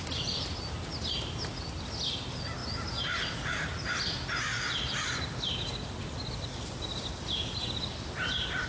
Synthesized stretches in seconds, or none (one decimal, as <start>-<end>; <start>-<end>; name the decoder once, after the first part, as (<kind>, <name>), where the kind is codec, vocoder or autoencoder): none